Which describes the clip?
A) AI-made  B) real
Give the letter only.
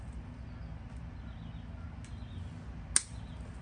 B